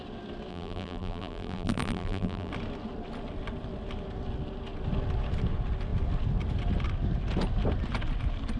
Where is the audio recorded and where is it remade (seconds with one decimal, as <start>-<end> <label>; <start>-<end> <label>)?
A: 0.0-0.5 recorded; 0.5-2.5 remade; 2.5-8.6 recorded